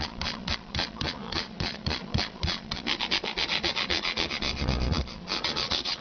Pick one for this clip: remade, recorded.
remade